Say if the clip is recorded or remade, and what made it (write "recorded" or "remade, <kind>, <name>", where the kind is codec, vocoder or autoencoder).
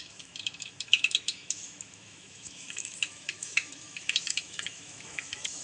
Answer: remade, autoencoder, DAC-VAE